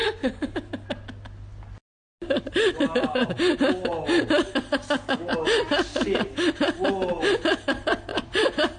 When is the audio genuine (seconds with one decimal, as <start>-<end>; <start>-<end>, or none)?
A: 0.5-8.1